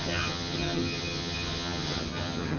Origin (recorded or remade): remade